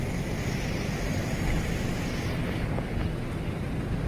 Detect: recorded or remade recorded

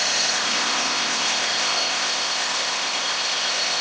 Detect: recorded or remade remade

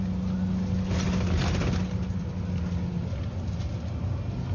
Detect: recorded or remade recorded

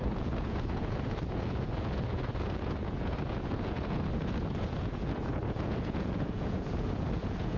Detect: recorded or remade remade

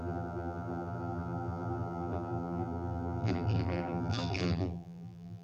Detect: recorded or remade remade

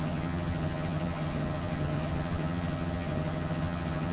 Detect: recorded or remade remade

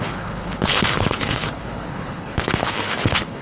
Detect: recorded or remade remade